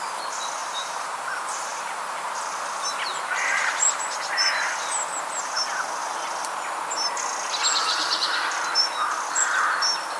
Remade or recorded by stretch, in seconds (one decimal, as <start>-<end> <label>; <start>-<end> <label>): 0.0-0.6 recorded; 0.6-2.3 remade; 2.3-7.8 recorded; 7.8-8.3 remade; 8.3-10.2 recorded